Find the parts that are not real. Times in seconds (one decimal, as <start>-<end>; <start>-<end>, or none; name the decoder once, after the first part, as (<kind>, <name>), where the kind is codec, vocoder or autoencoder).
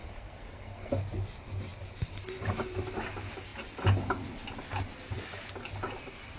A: 0.0-0.9 (codec, SNAC)